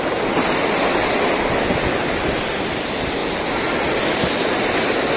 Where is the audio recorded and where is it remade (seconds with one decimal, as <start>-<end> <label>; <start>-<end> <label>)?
0.0-5.2 recorded